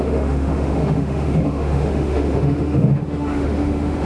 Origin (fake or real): fake